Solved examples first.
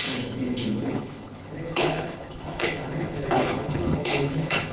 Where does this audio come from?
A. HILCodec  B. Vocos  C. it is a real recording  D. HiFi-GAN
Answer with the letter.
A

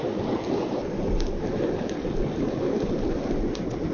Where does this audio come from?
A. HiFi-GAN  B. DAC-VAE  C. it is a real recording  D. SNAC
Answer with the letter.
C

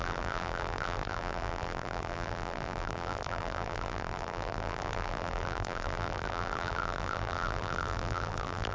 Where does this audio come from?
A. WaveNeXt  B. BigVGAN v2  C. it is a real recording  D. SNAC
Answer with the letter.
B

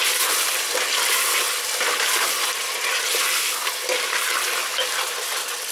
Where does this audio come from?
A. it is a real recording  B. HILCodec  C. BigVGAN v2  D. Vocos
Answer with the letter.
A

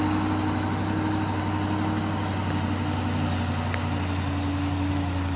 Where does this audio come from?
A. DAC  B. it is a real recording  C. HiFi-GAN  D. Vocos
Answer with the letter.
B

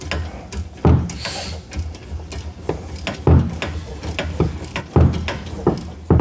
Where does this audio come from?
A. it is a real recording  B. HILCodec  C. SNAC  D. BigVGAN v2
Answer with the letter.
A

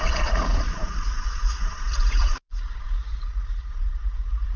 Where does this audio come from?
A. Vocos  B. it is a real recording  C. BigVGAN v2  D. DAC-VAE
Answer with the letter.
A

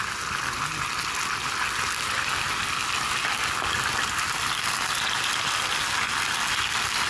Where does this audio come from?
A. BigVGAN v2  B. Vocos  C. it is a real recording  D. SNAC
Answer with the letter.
C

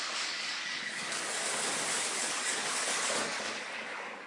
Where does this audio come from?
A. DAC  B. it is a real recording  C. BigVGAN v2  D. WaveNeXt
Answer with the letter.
A